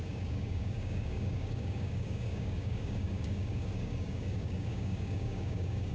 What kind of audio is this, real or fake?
fake